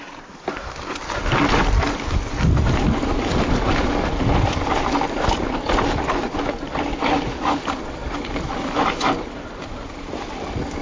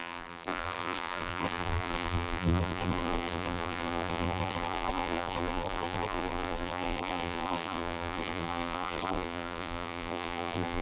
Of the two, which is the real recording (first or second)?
first